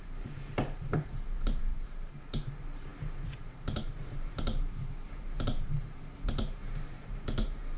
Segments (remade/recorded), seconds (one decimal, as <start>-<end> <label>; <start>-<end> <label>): 0.0-7.8 remade